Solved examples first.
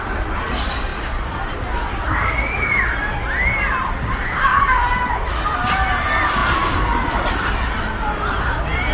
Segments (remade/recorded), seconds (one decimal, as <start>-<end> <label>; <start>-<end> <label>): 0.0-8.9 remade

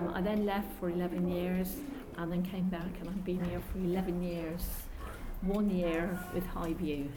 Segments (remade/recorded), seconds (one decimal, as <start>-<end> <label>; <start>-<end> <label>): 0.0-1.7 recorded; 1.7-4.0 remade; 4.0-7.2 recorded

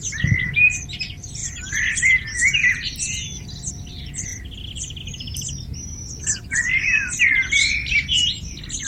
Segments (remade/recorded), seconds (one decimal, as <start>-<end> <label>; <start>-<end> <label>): 0.0-4.3 recorded; 4.3-5.0 remade; 5.0-8.9 recorded

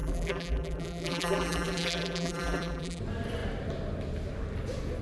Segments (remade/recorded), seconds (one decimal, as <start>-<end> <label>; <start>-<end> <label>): 0.0-3.0 remade; 3.0-5.0 recorded